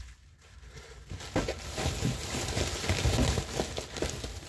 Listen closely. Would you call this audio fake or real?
real